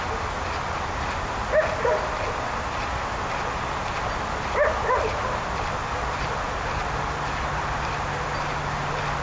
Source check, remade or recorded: recorded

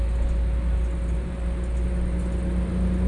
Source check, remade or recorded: recorded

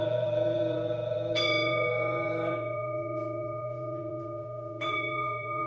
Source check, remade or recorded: remade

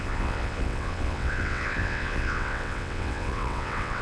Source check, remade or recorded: remade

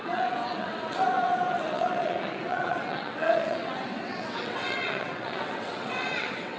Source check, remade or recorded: remade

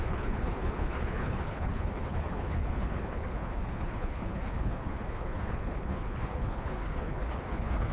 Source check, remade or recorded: remade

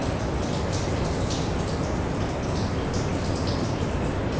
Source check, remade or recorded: recorded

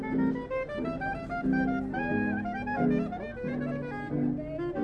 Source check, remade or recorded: recorded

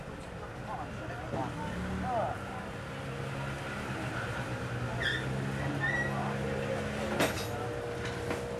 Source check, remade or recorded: recorded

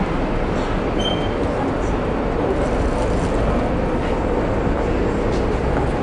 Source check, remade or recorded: recorded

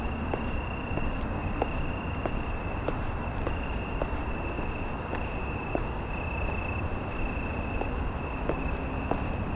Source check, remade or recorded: recorded